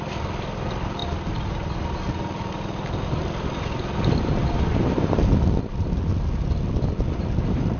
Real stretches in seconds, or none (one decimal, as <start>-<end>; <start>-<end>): 1.0-4.4; 6.1-6.7